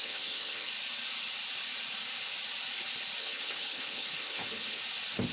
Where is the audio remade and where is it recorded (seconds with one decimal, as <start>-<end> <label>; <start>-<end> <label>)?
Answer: 0.0-0.7 remade; 0.7-3.2 recorded; 3.2-4.8 remade; 4.8-5.3 recorded